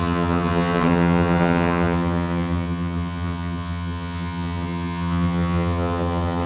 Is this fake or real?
fake